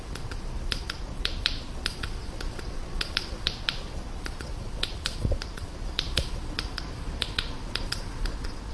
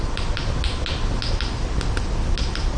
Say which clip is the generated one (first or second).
first